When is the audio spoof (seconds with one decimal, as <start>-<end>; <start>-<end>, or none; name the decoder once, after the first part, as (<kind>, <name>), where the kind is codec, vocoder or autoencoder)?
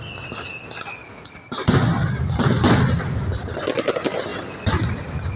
none